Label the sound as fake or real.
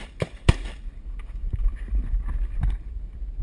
real